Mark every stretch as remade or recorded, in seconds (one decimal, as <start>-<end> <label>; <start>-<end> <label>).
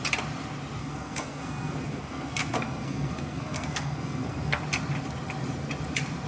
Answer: 0.0-0.8 recorded; 0.8-4.6 remade; 4.6-6.3 recorded